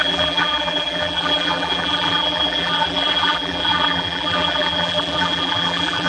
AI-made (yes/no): yes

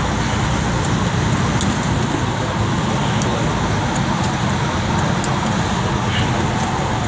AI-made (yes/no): no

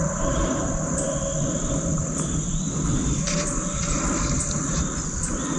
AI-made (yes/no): no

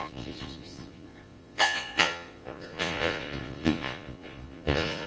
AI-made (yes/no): yes